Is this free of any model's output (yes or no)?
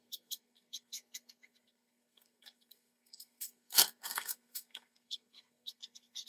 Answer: no